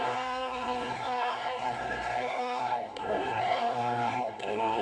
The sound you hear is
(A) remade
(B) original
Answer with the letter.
A